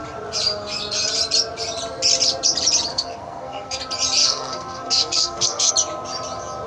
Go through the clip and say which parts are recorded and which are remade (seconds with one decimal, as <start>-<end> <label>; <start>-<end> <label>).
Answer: 0.0-2.9 recorded; 2.9-3.8 remade; 3.8-4.2 recorded; 4.2-5.7 remade; 5.7-6.7 recorded